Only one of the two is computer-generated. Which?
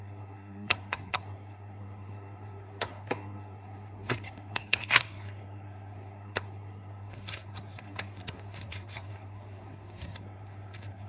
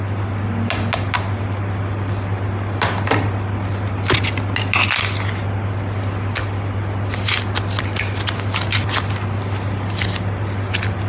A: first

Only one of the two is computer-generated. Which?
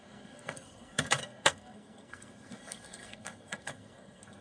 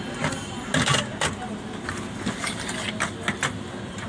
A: first